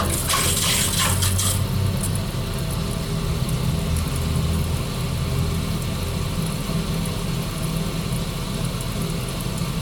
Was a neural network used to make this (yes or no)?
no